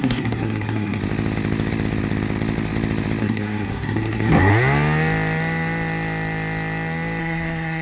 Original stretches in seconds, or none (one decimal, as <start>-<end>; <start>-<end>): 1.0-3.2; 4.5-7.2